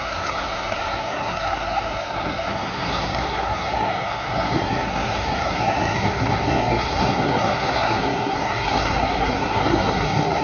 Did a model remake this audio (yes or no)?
yes